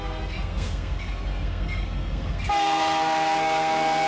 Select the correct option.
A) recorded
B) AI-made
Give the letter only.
B